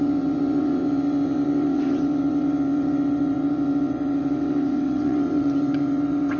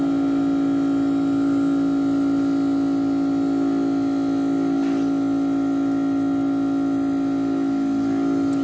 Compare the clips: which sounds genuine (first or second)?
second